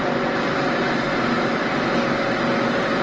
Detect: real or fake real